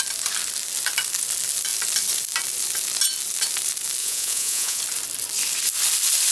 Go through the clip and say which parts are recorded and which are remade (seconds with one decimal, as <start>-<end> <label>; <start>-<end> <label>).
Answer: 0.0-4.0 recorded; 4.0-4.8 remade; 4.8-6.3 recorded